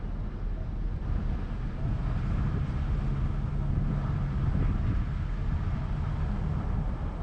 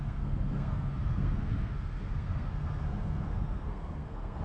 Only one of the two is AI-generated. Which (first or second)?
second